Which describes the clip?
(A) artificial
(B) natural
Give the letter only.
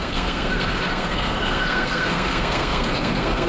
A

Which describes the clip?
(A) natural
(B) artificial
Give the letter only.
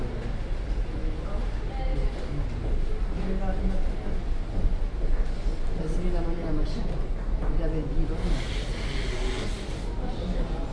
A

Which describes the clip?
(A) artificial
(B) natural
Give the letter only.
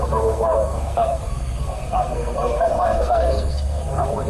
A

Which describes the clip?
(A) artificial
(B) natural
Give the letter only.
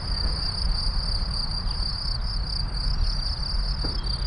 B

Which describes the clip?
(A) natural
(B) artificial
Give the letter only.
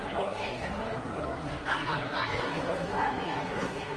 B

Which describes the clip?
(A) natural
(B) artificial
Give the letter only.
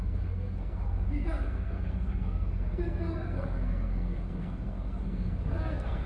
B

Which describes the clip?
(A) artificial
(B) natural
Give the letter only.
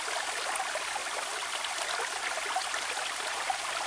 B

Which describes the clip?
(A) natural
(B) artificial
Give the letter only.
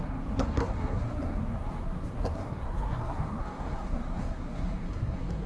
B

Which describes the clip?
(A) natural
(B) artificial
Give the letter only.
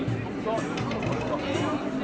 A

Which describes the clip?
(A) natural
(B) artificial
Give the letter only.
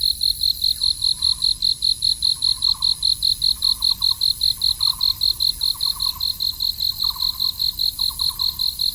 A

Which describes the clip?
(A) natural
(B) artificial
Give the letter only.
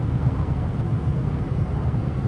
B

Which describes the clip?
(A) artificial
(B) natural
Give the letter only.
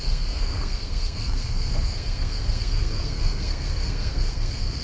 A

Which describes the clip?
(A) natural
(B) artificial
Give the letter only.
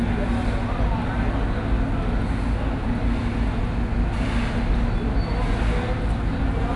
A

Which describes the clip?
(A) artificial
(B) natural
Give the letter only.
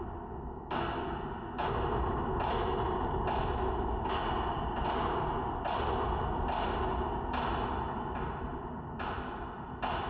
B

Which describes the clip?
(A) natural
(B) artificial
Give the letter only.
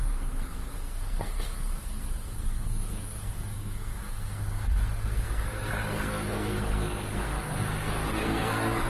B